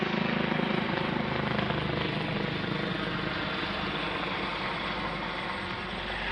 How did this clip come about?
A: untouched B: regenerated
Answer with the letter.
A